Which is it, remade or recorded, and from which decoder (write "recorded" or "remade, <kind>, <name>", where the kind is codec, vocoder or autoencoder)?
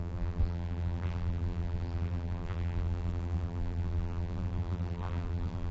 remade, vocoder, BigVGAN v2